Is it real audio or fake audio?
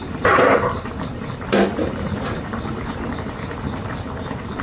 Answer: fake